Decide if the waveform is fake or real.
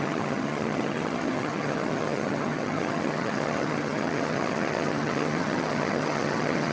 fake